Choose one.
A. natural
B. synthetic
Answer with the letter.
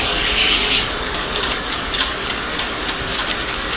B